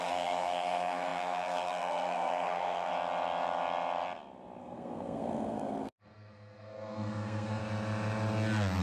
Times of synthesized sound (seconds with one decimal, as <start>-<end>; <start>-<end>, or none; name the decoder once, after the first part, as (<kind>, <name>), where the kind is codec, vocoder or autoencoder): 0.0-2.9 (codec, SNAC); 4.6-7.6